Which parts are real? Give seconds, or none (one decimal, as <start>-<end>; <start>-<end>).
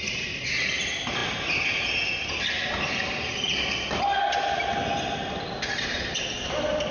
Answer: 0.0-6.9